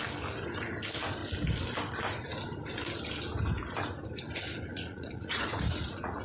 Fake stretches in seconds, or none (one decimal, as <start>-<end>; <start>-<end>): 4.7-6.2